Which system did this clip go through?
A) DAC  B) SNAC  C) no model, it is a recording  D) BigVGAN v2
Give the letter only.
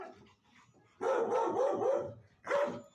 C